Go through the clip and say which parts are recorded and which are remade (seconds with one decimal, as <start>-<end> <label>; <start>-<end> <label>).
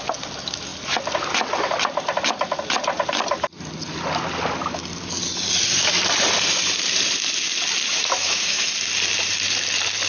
0.0-7.9 recorded; 7.9-8.7 remade; 8.7-10.1 recorded